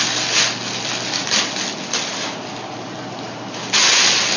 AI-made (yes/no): no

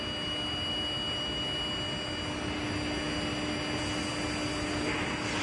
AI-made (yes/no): no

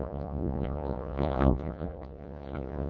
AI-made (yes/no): yes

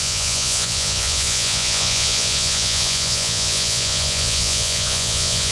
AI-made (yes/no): yes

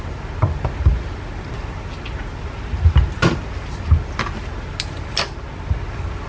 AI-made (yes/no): no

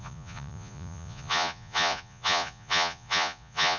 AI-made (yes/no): yes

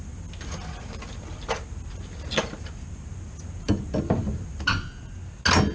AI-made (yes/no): no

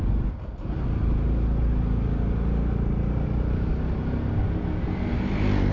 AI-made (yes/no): no